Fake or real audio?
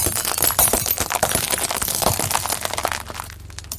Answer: real